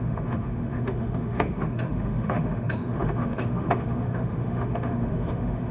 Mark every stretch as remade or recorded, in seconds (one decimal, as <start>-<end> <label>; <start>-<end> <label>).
0.0-5.7 remade